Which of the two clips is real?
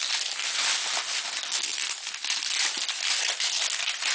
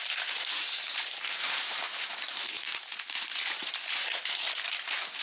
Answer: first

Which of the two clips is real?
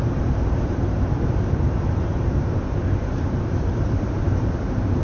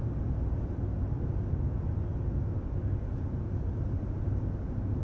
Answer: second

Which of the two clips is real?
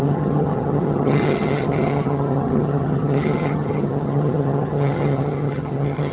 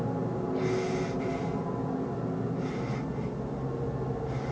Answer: second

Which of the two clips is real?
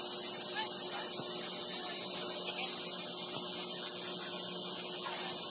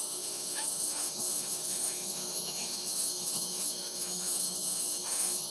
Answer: first